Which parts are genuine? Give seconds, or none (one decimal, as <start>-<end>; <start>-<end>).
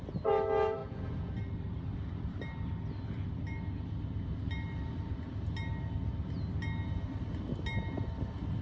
0.0-0.8; 1.3-8.6